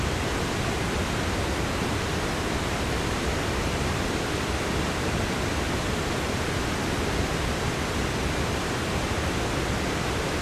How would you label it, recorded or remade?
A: recorded